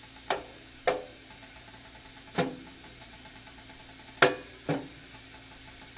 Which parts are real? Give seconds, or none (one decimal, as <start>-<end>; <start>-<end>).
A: 0.0-0.5; 1.7-2.1; 3.8-6.0